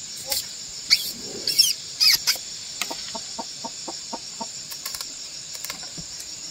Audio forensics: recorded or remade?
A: remade